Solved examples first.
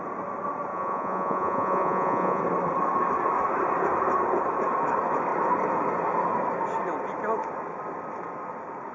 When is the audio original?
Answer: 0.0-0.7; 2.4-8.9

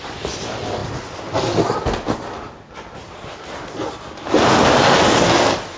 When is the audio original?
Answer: 0.0-5.8